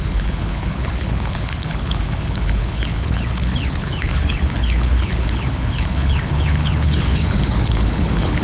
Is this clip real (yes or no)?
no